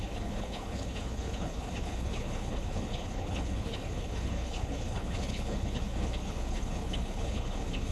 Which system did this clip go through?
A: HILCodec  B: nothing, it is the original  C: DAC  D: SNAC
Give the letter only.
A